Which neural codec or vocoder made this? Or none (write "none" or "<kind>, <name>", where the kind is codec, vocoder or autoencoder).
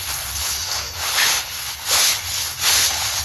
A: codec, HILCodec